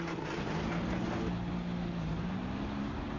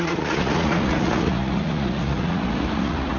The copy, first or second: second